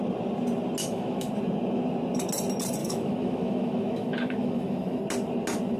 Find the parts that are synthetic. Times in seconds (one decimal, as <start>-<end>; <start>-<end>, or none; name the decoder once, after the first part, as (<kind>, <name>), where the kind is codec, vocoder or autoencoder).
0.8-1.3 (autoencoder, DAC-VAE); 2.8-5.0